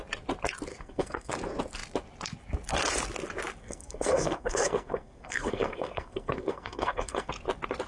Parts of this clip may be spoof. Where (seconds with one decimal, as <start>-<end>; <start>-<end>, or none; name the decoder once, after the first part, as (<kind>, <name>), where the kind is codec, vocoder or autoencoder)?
0.7-1.3 (codec, SNAC); 3.6-7.3